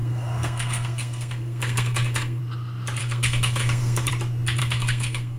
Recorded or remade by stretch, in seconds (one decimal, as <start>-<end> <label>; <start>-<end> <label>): 0.0-2.4 remade; 2.4-3.0 recorded; 3.0-4.1 remade; 4.1-4.6 recorded; 4.6-5.4 remade